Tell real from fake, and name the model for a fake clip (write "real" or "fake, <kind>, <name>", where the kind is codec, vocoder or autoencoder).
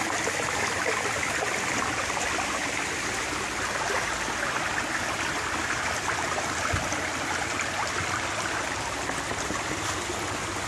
real